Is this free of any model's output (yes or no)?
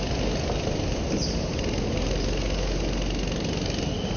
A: yes